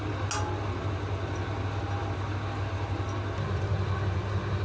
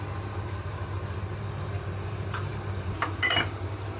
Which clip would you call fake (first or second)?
second